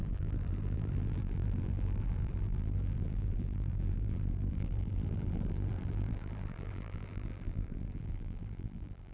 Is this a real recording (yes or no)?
no